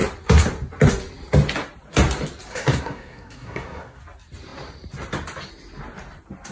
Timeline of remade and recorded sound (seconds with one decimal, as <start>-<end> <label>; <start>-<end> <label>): 0.0-2.5 recorded; 2.5-4.0 remade; 4.0-6.5 recorded